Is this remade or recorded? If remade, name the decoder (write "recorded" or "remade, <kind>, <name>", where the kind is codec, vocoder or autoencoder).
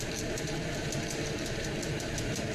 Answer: remade, vocoder, BigVGAN v2